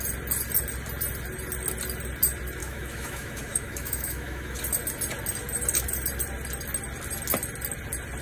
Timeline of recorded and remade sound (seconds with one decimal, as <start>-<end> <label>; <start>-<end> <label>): 0.0-2.6 recorded; 2.6-4.6 remade; 4.6-8.2 recorded

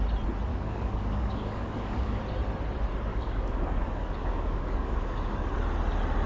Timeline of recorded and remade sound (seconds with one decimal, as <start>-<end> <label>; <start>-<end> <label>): 0.0-0.5 recorded; 0.5-2.2 remade; 2.2-3.1 recorded; 3.1-5.5 remade; 5.5-6.3 recorded

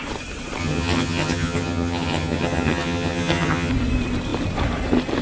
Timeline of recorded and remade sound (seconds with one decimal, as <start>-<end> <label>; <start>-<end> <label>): 0.0-0.6 recorded; 0.6-3.7 remade; 3.7-5.2 recorded

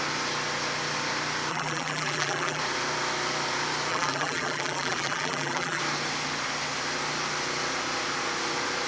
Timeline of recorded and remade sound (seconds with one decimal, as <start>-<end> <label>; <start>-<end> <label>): 0.0-1.5 recorded; 1.5-2.6 remade; 2.6-3.9 recorded; 3.9-5.8 remade; 5.8-8.9 recorded

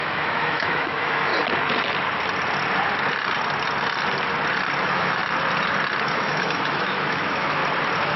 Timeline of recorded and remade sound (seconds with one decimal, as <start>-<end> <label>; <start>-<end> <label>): 0.0-1.3 remade; 1.3-4.8 recorded; 4.8-5.2 remade; 5.2-6.0 recorded; 6.0-7.6 remade; 7.6-8.2 recorded